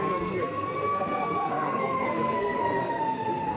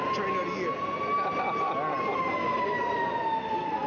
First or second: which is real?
second